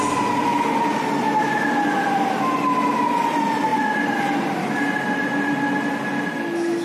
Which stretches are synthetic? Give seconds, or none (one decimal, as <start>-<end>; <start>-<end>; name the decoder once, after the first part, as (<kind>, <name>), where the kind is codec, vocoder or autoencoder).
none